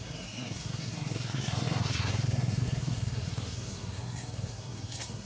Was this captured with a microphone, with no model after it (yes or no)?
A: no